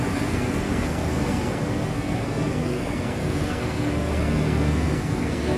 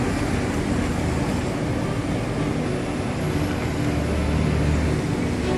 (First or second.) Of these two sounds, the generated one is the first